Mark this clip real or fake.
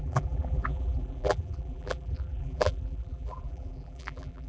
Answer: fake